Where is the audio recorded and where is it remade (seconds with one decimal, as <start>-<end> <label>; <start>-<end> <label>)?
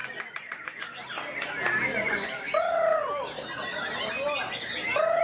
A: 0.0-0.8 remade; 0.8-1.9 recorded; 1.9-2.4 remade; 2.4-5.2 recorded